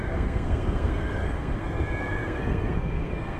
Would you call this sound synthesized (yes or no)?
yes